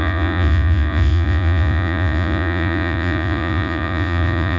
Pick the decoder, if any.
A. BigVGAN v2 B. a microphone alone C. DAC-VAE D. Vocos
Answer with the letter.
D